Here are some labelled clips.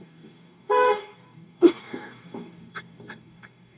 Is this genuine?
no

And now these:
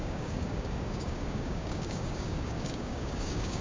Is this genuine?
no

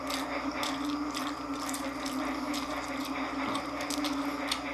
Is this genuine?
yes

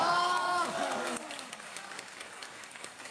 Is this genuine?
no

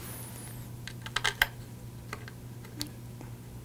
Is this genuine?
yes